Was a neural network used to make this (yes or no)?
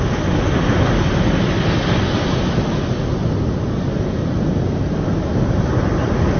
no